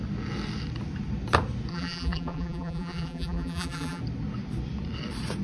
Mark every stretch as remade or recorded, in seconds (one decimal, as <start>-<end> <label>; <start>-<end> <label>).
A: 0.0-1.7 recorded; 1.7-4.0 remade; 4.0-5.4 recorded